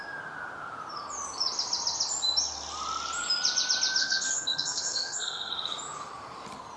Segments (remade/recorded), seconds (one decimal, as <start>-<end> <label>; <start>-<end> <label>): 0.0-4.0 recorded; 4.0-5.5 remade; 5.5-6.8 recorded